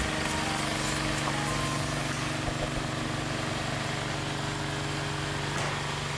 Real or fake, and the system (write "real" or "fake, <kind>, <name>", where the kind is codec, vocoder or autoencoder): real